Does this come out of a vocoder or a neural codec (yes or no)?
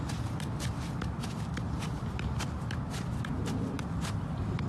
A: no